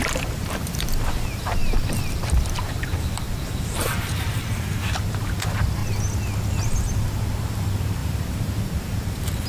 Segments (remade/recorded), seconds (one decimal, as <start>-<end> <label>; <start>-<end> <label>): 0.0-5.8 remade; 5.8-6.5 recorded; 6.5-9.5 remade

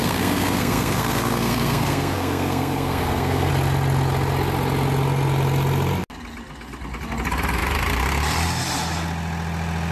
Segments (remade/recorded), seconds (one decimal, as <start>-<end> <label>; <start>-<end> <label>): 0.0-3.5 remade; 3.5-9.9 recorded

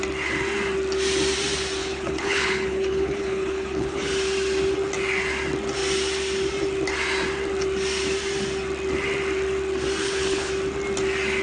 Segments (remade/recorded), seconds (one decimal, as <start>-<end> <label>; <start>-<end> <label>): 0.0-1.8 recorded; 1.8-4.1 remade; 4.1-10.0 recorded; 10.0-10.5 remade; 10.5-11.4 recorded

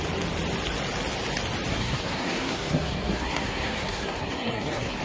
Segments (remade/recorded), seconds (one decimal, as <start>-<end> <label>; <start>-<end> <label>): 0.0-1.7 recorded; 1.7-5.0 remade

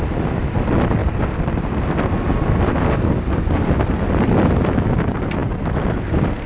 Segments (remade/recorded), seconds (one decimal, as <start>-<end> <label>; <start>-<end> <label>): 0.0-6.5 recorded

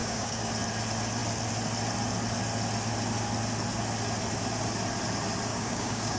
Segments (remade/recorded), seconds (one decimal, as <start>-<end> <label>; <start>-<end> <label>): 0.0-0.5 remade; 0.5-5.5 recorded; 5.5-6.2 remade

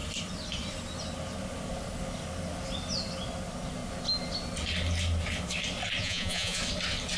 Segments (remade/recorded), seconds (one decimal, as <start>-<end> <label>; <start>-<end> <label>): 0.0-6.0 recorded; 6.0-6.6 remade; 6.6-7.2 recorded